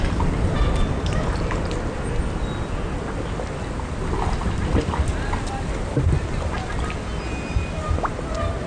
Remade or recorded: recorded